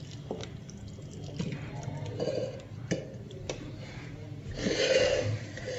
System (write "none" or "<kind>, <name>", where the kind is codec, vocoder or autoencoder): none